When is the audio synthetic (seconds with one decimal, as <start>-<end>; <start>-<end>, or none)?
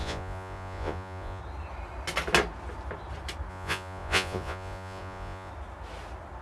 0.0-1.4; 3.5-5.5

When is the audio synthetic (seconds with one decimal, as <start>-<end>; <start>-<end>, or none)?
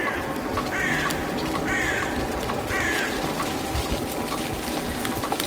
none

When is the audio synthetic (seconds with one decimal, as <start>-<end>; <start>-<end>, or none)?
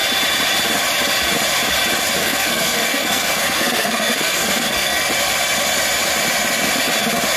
2.2-5.1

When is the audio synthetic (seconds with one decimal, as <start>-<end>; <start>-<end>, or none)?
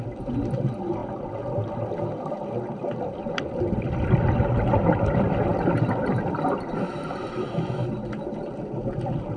none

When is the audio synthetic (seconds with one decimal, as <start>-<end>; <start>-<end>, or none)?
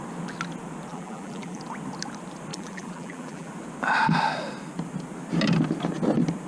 0.9-1.6; 2.5-3.5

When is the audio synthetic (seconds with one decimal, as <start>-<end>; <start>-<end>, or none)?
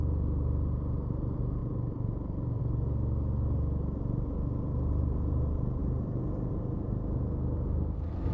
1.6-2.6